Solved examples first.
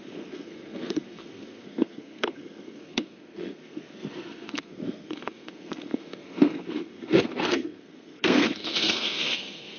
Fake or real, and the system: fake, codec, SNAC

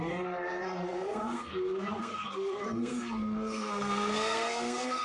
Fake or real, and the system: fake, codec, SNAC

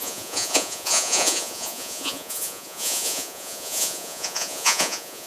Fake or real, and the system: fake, vocoder, Vocos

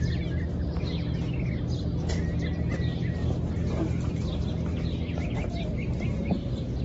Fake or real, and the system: real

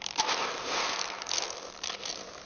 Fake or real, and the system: real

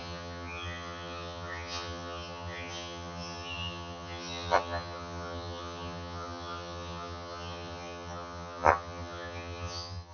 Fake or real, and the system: fake, vocoder, HiFi-GAN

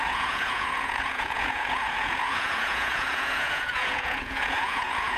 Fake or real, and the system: fake, vocoder, Vocos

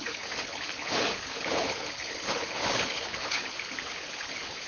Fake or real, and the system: fake, codec, HILCodec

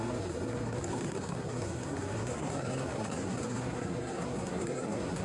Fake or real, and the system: fake, codec, SNAC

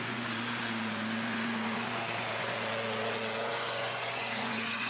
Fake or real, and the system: fake, vocoder, Vocos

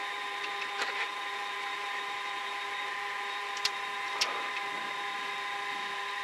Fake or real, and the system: fake, vocoder, BigVGAN v2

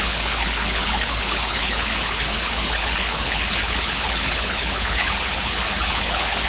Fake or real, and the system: fake, codec, HILCodec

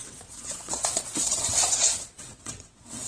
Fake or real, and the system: fake, vocoder, WaveNeXt